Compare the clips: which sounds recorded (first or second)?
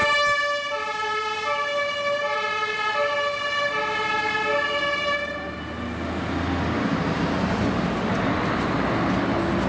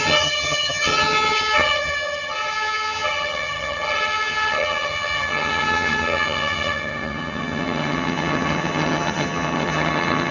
first